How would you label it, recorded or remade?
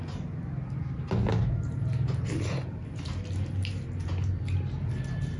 recorded